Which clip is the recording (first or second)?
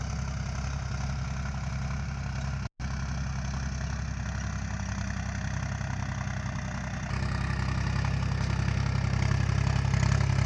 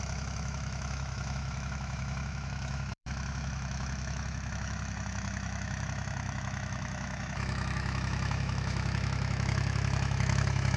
first